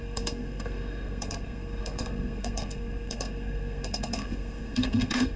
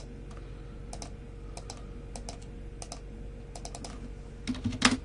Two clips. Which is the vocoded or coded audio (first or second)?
first